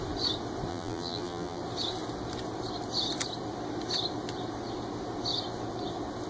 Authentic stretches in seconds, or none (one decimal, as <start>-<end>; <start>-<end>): 0.0-0.7; 1.6-6.3